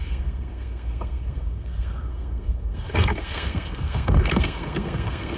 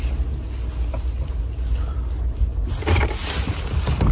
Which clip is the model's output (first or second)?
first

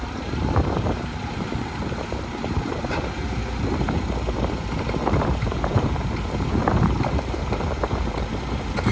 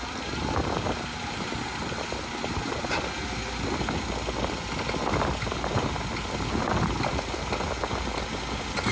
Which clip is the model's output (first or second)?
first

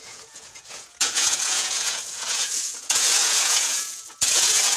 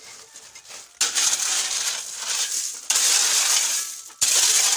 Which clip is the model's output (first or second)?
first